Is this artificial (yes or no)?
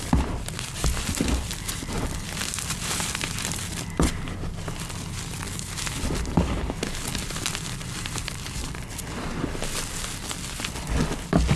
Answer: no